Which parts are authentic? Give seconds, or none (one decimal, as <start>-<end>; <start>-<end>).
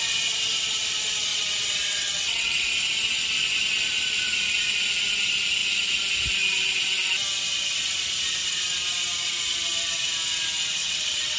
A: 0.0-1.3; 2.7-10.8